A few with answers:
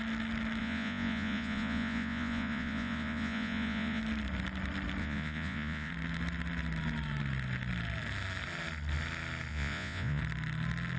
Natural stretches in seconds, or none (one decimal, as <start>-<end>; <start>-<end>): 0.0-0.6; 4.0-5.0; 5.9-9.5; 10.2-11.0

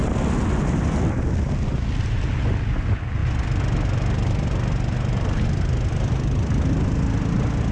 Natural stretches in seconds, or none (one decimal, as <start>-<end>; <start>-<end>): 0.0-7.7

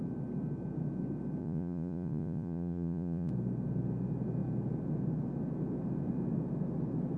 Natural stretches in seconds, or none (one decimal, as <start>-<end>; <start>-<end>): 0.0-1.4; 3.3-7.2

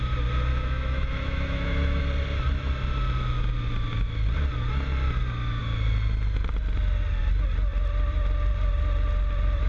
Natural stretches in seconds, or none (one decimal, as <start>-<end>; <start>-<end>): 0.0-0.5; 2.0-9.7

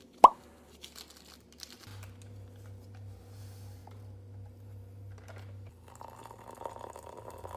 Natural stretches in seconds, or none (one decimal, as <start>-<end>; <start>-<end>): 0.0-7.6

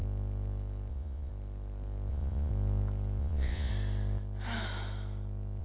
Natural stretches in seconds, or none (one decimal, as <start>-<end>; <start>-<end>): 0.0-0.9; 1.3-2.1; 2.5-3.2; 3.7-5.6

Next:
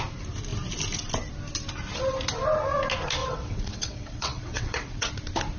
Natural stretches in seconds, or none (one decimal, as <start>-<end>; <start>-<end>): 0.0-3.2; 5.1-5.6

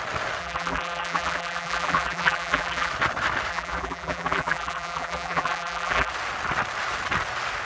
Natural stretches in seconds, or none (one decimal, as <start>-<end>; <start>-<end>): 0.0-0.4; 2.9-3.5; 6.1-7.7